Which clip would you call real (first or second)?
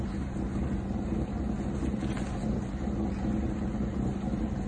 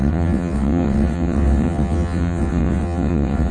first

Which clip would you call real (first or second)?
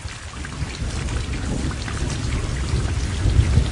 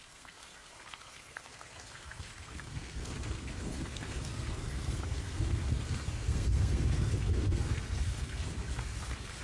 first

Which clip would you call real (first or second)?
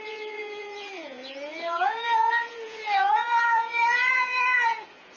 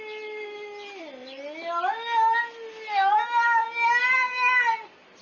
second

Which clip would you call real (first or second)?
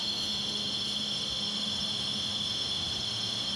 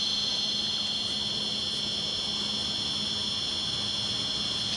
second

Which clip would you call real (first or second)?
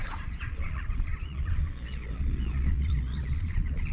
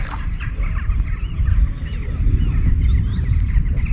second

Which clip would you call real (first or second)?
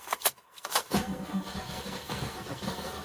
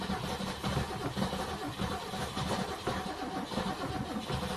second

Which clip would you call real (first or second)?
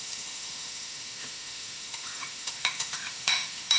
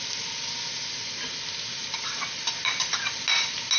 second